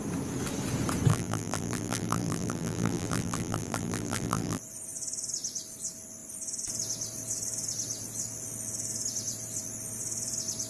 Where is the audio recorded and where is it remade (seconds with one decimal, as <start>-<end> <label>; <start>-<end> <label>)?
0.0-1.1 recorded; 1.1-4.6 remade; 4.6-10.7 recorded